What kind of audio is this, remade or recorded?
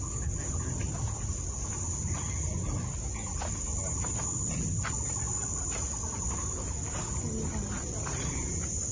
recorded